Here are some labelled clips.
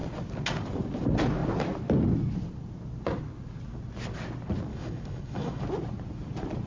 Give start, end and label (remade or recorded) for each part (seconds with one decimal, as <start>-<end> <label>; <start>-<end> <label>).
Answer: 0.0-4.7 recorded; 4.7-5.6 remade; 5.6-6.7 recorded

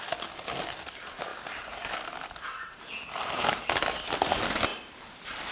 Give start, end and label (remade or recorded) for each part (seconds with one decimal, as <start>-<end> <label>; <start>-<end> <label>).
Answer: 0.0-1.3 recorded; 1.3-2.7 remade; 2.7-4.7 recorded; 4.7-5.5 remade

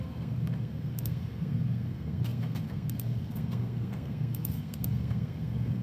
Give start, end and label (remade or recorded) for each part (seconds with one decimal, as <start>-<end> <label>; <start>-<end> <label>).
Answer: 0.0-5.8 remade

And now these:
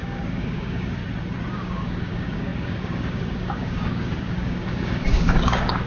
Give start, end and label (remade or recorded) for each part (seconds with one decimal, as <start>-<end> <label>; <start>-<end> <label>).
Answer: 0.0-1.0 remade; 1.0-1.5 recorded; 1.5-5.9 remade